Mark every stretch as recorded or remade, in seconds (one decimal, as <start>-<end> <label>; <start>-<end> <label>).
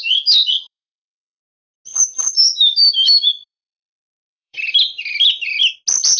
0.0-0.5 recorded; 0.5-1.4 remade; 1.4-1.9 recorded; 1.9-5.6 remade; 5.6-6.2 recorded